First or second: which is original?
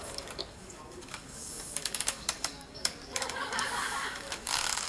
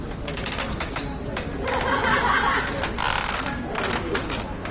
second